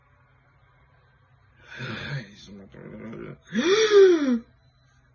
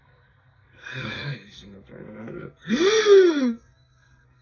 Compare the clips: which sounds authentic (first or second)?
first